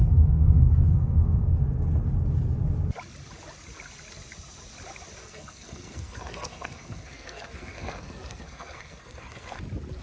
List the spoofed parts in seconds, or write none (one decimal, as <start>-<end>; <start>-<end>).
0.0-1.6; 5.2-9.6